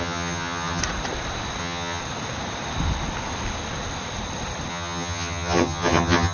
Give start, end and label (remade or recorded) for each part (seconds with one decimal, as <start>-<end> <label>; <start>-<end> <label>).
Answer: 0.0-0.8 remade; 0.8-1.6 recorded; 1.6-2.0 remade; 2.0-4.7 recorded; 4.7-6.3 remade